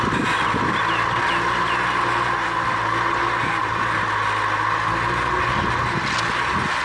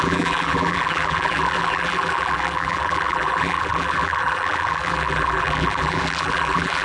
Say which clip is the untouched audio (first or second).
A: first